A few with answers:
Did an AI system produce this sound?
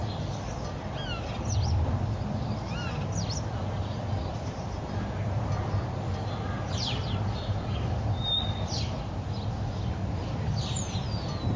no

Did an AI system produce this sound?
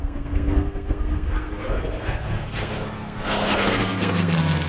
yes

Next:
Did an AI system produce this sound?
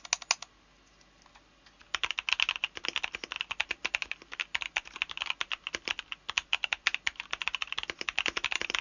no